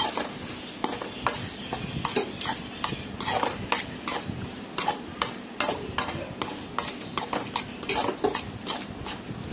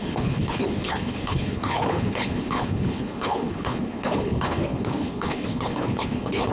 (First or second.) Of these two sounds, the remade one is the second